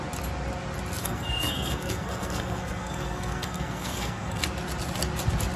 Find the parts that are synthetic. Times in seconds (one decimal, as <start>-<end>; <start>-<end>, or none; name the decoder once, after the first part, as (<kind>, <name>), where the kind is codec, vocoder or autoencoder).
1.0-4.4 (codec, SNAC)